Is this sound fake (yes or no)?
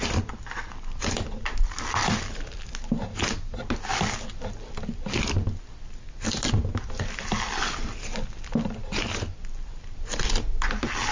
no